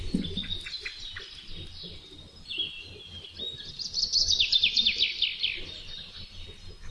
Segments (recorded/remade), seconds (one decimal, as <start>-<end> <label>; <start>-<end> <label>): 0.0-6.9 recorded

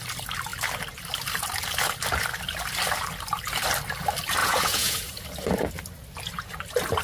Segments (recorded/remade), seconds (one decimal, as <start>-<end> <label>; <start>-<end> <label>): 0.0-4.4 recorded; 4.4-5.1 remade; 5.1-7.0 recorded

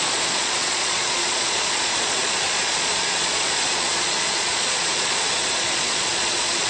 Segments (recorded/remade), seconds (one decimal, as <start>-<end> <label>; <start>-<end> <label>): 0.0-6.7 remade

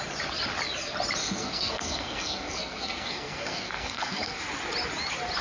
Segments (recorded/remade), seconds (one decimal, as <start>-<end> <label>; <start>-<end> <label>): 0.0-1.2 recorded; 1.2-4.4 remade; 4.4-5.4 recorded